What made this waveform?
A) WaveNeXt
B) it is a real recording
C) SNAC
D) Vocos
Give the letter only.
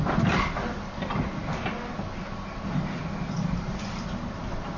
B